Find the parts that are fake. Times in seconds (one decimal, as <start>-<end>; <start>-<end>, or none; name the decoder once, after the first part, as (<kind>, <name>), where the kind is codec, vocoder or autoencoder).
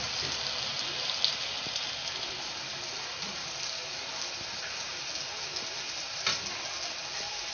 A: none